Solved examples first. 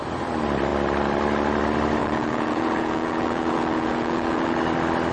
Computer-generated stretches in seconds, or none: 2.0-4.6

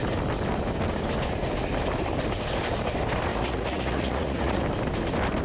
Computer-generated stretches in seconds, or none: 3.3-4.6

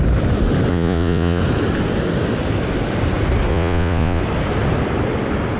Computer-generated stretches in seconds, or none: 0.7-1.4; 3.5-4.2